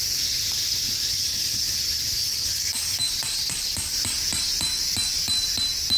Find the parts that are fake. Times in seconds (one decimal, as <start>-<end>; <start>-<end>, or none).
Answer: 1.1-1.8; 2.2-3.1